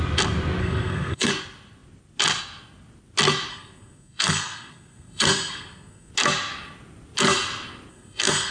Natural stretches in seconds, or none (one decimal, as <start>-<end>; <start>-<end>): 0.0-0.6; 1.3-3.5; 6.1-7.9